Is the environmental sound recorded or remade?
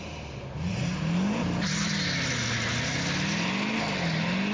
recorded